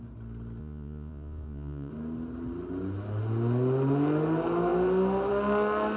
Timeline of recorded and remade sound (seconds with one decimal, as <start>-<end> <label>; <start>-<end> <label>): 0.0-0.6 recorded; 0.6-1.9 remade; 1.9-6.0 recorded